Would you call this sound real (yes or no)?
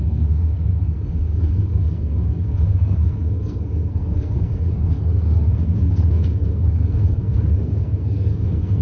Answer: no